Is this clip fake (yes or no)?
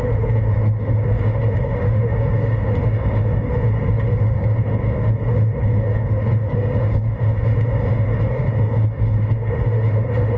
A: yes